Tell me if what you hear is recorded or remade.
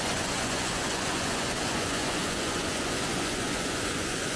remade